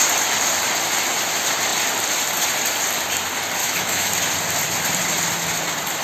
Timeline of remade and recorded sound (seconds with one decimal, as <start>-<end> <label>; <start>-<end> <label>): 0.0-3.6 recorded; 3.6-4.1 remade; 4.1-6.0 recorded